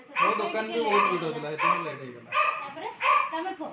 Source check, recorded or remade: remade